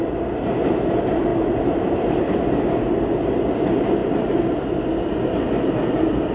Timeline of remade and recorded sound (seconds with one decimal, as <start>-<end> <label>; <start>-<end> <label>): 0.0-6.3 recorded